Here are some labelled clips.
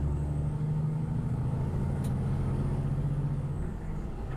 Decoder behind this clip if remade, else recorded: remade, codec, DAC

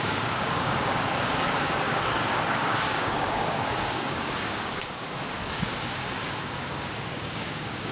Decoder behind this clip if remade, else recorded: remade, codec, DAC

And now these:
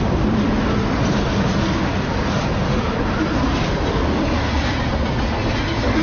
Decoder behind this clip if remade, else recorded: recorded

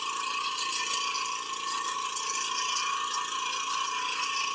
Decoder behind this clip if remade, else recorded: recorded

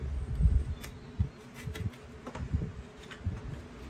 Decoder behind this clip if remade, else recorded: recorded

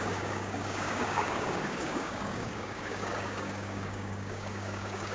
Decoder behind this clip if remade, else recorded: remade, codec, DAC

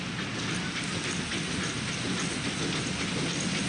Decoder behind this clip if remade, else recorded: recorded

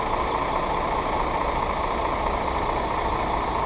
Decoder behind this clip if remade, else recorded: recorded